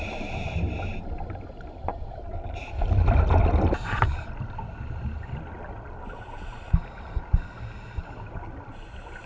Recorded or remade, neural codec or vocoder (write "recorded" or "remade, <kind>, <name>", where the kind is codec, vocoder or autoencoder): recorded